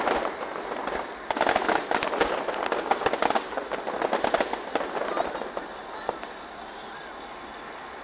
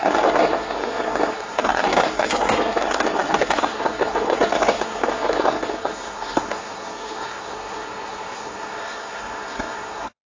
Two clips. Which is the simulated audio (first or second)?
second